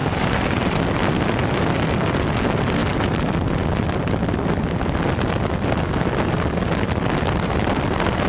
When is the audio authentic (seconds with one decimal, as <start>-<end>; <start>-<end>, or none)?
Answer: 0.6-2.8; 4.1-8.3